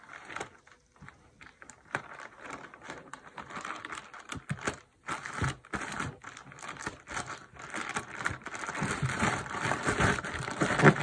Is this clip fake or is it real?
real